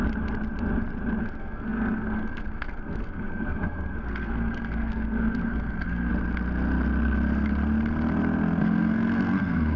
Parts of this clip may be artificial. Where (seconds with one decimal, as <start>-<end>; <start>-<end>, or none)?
1.2-6.1; 8.6-9.8